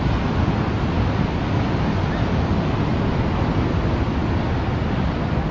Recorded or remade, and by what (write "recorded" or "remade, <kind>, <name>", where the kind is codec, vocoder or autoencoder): recorded